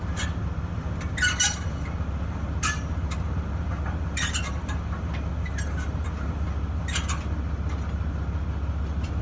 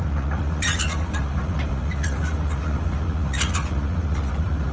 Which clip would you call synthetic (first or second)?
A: second